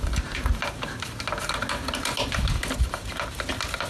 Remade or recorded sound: recorded